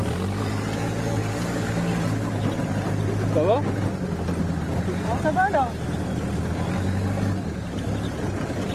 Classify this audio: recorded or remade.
recorded